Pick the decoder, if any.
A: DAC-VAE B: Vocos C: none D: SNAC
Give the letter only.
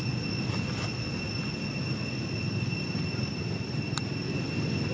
C